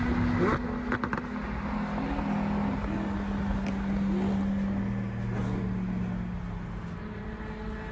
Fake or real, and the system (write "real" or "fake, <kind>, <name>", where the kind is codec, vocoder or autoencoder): real